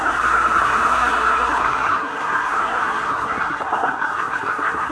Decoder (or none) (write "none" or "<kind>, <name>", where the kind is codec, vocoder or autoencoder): codec, SNAC